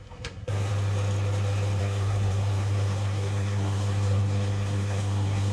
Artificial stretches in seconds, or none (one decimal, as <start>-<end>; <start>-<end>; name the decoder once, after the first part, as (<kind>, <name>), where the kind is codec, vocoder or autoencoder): 0.0-0.7 (codec, SNAC); 1.8-5.5

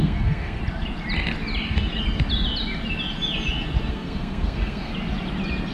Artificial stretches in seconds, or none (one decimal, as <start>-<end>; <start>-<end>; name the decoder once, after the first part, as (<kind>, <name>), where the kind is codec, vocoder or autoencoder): 0.0-0.6 (codec, SNAC); 3.9-4.9

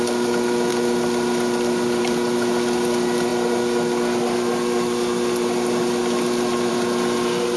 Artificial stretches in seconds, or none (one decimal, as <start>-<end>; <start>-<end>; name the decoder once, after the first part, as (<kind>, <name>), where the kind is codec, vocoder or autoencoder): none

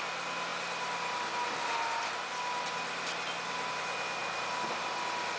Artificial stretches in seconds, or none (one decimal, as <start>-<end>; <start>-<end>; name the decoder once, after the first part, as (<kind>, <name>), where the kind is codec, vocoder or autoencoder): none

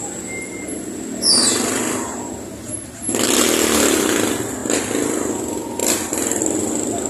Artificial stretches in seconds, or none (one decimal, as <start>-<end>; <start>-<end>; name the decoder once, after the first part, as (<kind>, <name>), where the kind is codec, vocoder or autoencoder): 1.4-3.4 (vocoder, BigVGAN v2)